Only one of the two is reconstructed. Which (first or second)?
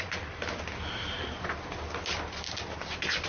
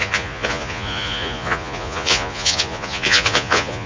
second